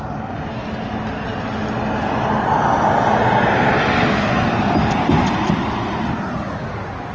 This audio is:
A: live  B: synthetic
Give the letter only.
A